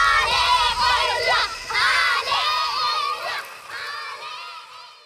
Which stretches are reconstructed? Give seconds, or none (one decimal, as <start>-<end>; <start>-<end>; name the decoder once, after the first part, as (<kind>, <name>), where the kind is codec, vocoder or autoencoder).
1.5-3.4 (vocoder, BigVGAN v2)